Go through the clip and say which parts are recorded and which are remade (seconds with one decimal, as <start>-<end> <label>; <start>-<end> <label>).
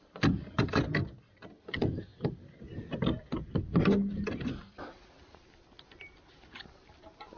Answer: 0.0-7.4 recorded